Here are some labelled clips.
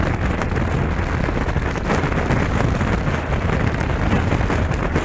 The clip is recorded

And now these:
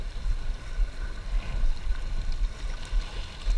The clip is recorded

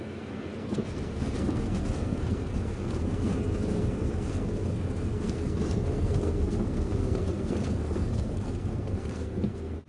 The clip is remade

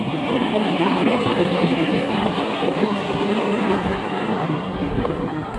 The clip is remade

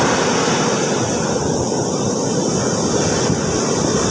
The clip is recorded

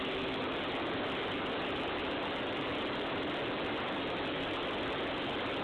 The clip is recorded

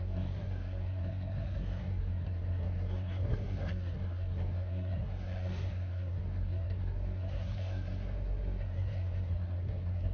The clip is remade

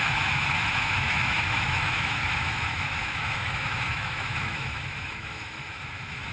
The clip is remade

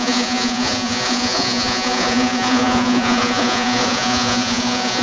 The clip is remade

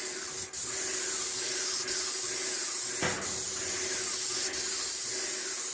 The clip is recorded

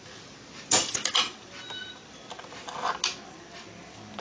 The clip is recorded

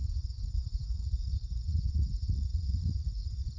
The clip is remade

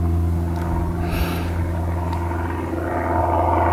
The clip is recorded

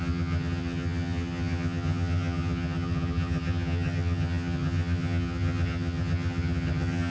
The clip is remade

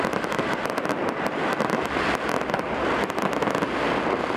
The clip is recorded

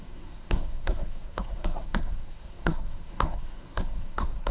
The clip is remade